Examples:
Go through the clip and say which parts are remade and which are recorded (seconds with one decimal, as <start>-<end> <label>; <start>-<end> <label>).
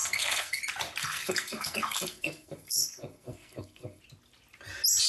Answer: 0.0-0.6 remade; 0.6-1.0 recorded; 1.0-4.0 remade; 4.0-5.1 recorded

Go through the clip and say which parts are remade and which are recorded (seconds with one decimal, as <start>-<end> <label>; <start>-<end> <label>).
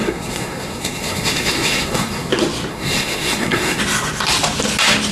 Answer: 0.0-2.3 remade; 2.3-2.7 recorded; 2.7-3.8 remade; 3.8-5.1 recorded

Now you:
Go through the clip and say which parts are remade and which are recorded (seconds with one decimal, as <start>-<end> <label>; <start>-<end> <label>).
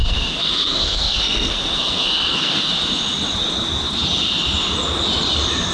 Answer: 0.0-2.7 remade; 2.7-5.7 recorded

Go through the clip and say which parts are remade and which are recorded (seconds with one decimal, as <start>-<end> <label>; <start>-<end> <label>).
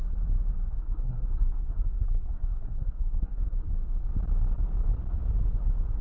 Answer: 0.0-0.8 recorded; 0.8-3.7 remade; 3.7-6.0 recorded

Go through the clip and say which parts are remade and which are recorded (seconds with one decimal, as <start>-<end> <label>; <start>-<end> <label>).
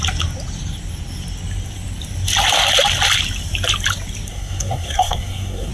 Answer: 0.0-4.3 recorded; 4.3-5.7 remade